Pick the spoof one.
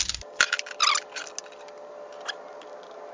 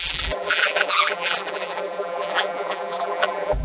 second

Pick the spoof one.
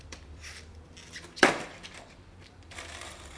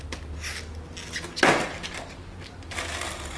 first